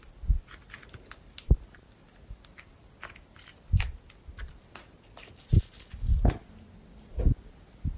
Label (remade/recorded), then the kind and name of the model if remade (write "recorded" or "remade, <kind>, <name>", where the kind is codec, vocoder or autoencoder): recorded